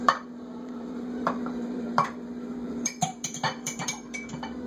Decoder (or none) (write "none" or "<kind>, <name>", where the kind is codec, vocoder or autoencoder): vocoder, BigVGAN v2